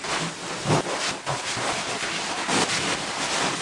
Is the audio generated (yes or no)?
no